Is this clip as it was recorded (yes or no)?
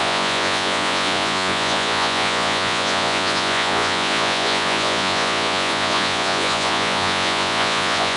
no